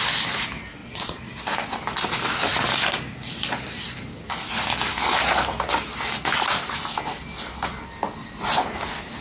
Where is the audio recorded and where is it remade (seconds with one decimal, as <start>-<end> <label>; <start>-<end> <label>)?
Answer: 0.0-0.8 recorded; 0.8-1.3 remade; 1.3-9.2 recorded